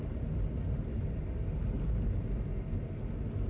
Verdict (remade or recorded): recorded